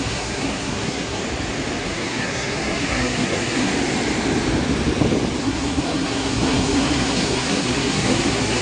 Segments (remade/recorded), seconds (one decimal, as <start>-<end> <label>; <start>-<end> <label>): 0.0-1.2 remade; 1.2-1.8 recorded; 1.8-3.7 remade; 3.7-5.4 recorded; 5.4-8.6 remade